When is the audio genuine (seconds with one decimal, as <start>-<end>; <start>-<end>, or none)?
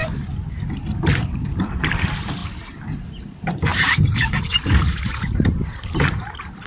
0.0-1.0; 2.4-3.2